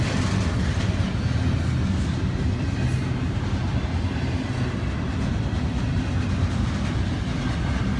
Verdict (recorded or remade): recorded